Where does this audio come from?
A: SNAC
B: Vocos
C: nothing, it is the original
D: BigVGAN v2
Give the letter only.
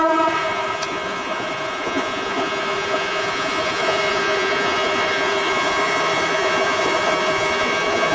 B